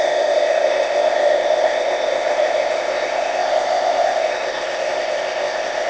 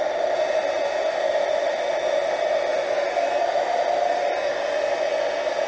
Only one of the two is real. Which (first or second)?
second